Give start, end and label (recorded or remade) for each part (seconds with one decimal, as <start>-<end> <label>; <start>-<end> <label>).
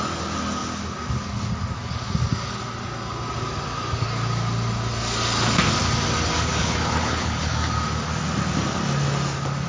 0.0-6.6 recorded; 6.6-7.5 remade; 7.5-9.7 recorded